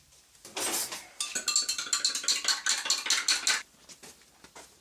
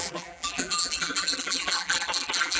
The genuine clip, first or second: first